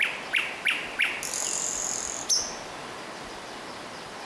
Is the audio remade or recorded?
recorded